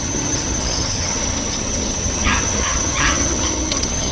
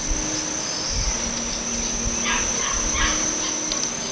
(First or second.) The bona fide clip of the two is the second